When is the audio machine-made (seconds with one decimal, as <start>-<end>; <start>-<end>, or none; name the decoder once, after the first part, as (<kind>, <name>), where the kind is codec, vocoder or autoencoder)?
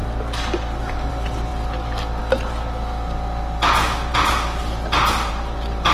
none